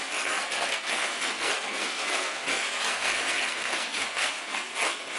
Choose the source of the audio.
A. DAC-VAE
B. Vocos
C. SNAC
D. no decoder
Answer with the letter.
C